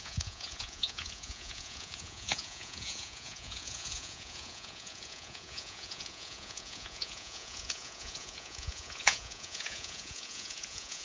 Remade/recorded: remade